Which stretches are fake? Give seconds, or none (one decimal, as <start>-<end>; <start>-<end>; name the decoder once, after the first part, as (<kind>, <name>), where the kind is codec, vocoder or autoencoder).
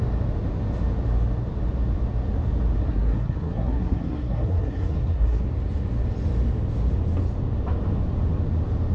2.8-5.4 (codec, SNAC)